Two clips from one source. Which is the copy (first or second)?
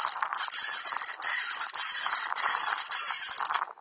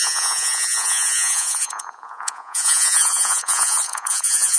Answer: second